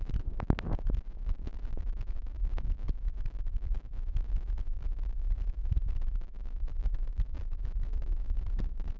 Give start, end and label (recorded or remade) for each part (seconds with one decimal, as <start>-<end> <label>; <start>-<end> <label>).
0.0-2.2 remade; 2.2-6.6 recorded; 6.6-9.0 remade